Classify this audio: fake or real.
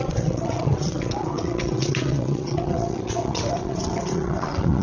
fake